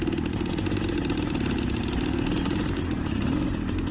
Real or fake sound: real